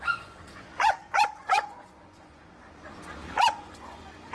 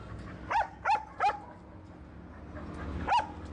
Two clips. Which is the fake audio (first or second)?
first